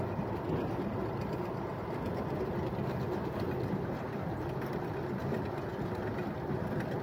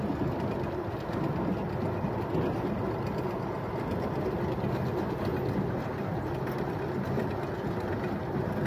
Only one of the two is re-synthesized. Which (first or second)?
first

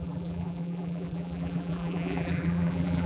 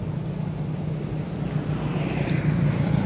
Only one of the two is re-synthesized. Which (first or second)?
first